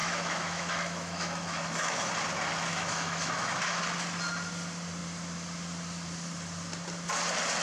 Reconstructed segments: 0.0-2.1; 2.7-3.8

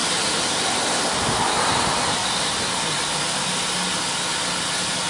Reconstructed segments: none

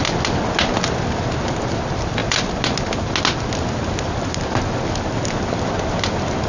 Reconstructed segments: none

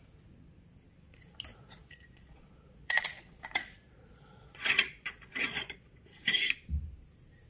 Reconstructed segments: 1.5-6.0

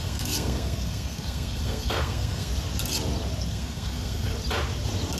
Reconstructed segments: 0.0-2.5; 3.5-4.3

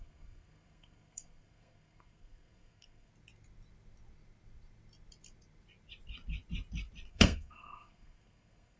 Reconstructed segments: 0.0-3.1; 7.1-8.8

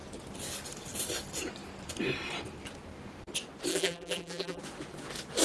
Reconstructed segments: 3.7-4.6